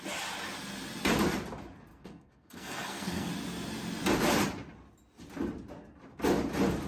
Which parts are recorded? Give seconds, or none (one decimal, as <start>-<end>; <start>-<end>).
0.0-1.9; 3.3-6.9